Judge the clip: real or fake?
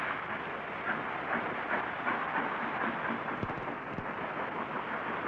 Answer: real